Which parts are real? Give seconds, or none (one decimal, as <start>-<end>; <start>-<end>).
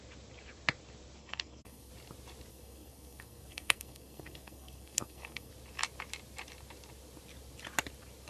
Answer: 0.0-1.2; 1.9-2.5; 5.5-8.3